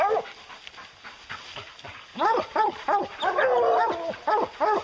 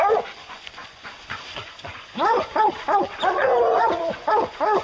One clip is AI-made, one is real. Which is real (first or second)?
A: first